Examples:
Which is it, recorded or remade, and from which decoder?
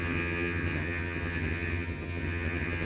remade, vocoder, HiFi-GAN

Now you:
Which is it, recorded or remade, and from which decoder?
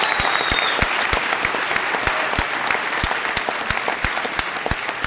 recorded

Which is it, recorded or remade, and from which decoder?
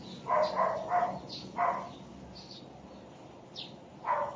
recorded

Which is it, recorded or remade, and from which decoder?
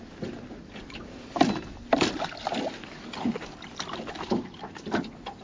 recorded